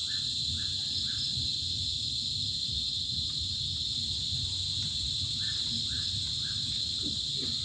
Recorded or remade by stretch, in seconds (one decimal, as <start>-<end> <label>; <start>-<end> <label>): 0.0-7.6 recorded